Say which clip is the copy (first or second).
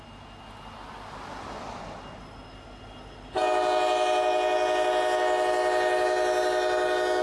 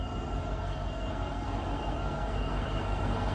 second